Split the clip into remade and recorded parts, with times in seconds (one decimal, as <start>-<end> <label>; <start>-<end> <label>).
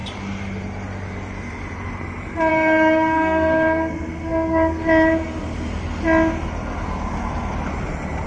0.0-2.5 recorded; 2.5-4.8 remade; 4.8-8.3 recorded